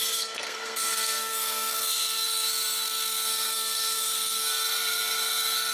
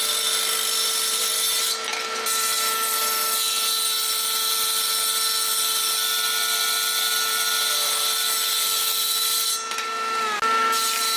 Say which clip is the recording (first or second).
second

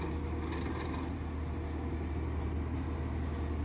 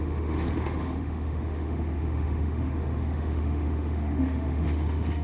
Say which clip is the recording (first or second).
first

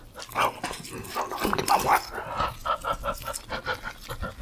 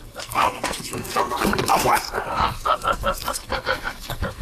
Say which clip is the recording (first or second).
first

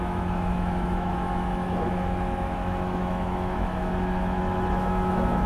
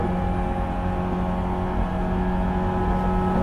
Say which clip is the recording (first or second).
second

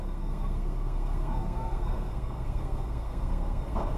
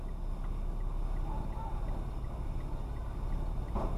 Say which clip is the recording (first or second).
second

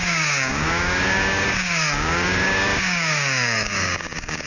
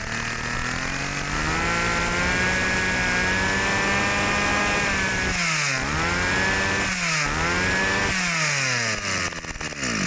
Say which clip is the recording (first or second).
second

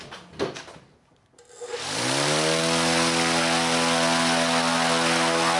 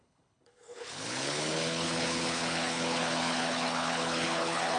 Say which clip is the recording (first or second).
first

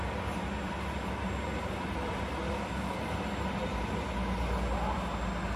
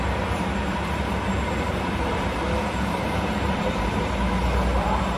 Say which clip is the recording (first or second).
first